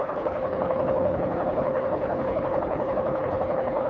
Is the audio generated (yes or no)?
yes